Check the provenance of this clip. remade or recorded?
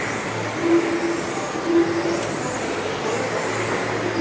recorded